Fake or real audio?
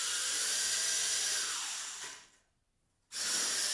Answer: real